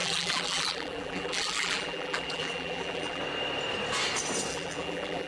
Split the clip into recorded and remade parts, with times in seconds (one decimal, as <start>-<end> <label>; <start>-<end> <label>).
0.0-3.2 remade; 3.2-4.5 recorded; 4.5-5.3 remade